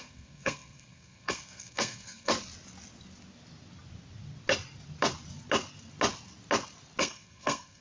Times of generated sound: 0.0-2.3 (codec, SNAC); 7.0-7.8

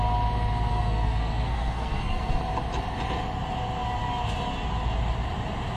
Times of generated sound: 0.7-2.3 (codec, SNAC)

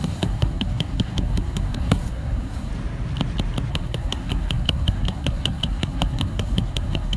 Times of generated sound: 0.0-2.7 (codec, SNAC); 3.7-7.2

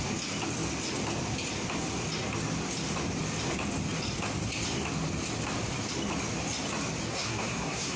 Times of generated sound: 7.1-8.0 (codec, SNAC)